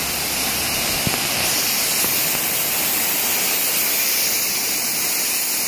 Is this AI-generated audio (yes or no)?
no